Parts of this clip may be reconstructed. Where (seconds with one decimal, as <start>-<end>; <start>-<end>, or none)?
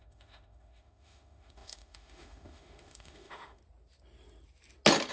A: 0.0-3.6